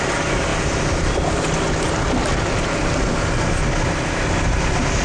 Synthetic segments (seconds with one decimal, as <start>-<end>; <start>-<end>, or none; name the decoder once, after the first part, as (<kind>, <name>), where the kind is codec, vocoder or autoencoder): none